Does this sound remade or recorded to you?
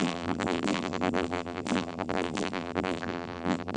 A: remade